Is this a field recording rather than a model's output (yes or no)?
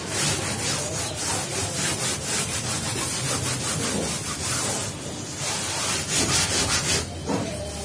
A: yes